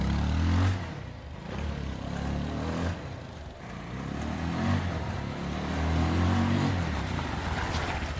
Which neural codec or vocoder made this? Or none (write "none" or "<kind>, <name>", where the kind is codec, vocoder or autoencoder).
none